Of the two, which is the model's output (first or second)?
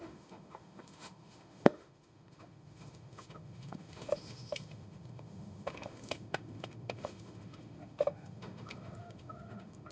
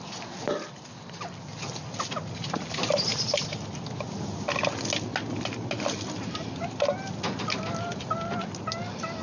first